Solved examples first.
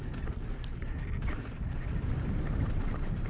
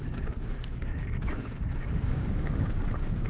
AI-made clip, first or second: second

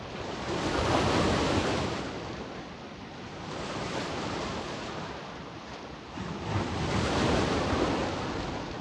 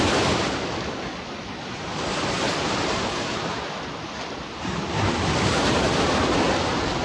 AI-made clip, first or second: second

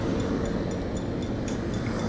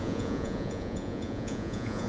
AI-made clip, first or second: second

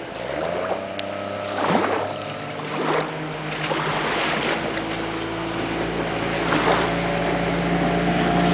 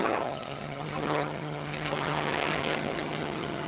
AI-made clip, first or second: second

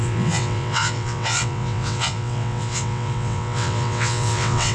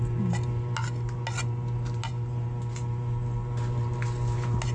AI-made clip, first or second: first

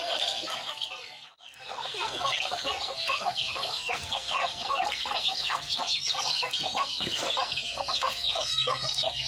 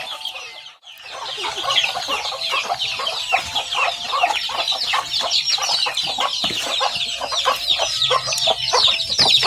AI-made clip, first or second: first